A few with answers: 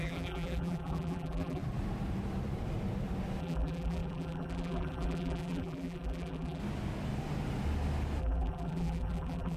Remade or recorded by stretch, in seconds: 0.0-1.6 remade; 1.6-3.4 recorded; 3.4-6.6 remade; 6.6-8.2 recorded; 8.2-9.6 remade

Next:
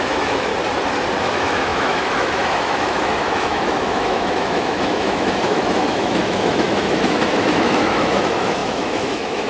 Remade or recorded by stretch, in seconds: 0.0-0.5 remade; 0.5-1.2 recorded; 1.2-9.5 remade

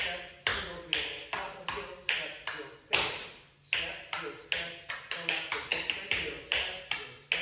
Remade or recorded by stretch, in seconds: 0.0-7.4 recorded

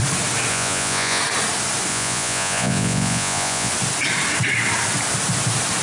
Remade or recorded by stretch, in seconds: 0.0-0.5 recorded; 0.5-1.2 remade; 1.2-1.9 recorded; 1.9-3.7 remade; 3.7-5.8 recorded

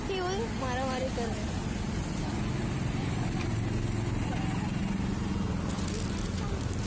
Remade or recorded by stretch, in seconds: 0.0-6.9 recorded

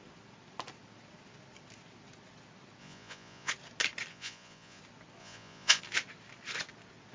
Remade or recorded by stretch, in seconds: 0.0-2.8 recorded; 2.8-3.5 remade; 3.5-4.1 recorded; 4.1-4.8 remade; 4.8-5.2 recorded; 5.2-5.8 remade; 5.8-7.1 recorded